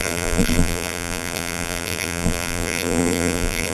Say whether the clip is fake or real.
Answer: fake